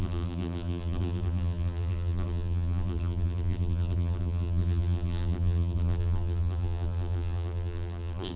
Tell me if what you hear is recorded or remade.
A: remade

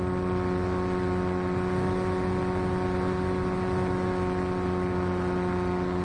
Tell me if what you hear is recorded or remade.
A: recorded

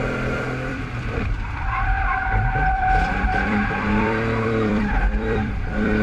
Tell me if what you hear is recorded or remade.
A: remade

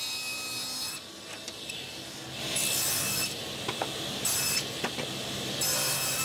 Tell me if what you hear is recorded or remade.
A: recorded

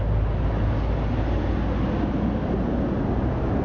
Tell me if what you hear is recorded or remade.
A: recorded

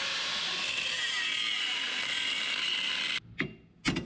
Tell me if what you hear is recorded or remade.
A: recorded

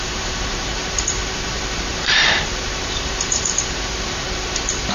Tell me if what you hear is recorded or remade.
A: remade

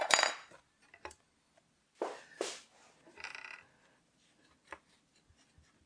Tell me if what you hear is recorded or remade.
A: recorded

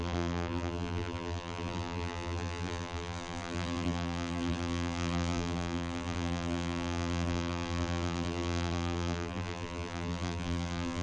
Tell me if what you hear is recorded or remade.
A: remade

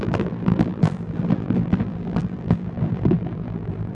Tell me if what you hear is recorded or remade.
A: remade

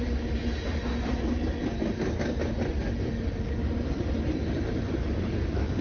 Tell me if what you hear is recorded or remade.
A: recorded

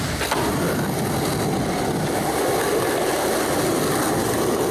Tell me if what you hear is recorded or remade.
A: recorded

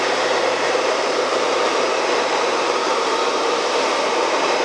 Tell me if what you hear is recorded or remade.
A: remade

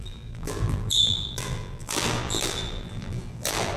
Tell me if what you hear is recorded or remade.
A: remade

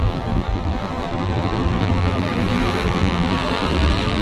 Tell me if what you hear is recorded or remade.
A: remade